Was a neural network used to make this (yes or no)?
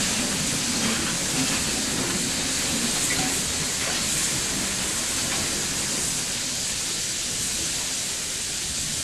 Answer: no